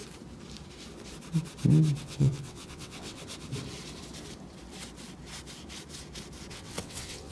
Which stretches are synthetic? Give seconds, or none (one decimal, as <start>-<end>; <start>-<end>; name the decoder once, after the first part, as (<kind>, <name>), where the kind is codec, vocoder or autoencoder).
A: 2.0-3.2 (vocoder, WaveNeXt); 6.5-7.3